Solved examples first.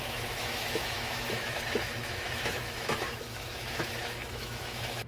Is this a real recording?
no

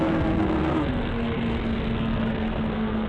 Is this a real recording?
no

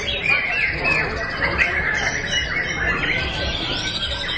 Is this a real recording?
yes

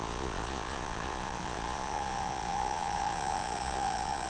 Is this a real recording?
no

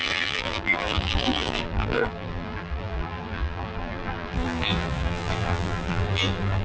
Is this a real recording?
no